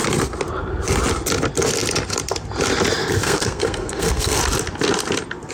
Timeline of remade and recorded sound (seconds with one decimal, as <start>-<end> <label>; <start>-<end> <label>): 0.0-3.0 recorded; 3.0-4.4 remade; 4.4-5.5 recorded